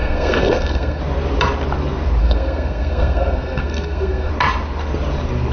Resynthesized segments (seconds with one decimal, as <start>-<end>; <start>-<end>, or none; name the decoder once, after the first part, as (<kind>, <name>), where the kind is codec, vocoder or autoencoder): 0.0-1.0 (codec, SNAC); 2.2-4.3